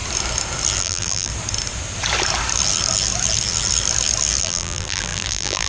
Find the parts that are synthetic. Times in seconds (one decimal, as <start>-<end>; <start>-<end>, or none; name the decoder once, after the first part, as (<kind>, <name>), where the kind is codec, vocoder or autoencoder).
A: 0.8-1.3 (vocoder, BigVGAN v2); 4.4-5.7